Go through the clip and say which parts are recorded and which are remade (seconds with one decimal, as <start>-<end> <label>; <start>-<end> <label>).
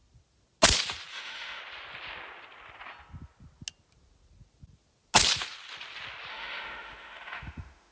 0.0-1.1 recorded; 1.1-1.6 remade; 1.6-6.3 recorded; 6.3-7.9 remade